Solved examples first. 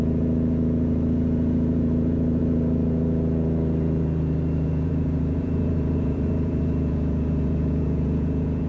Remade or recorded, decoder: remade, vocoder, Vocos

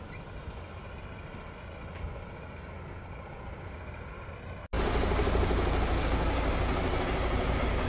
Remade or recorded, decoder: recorded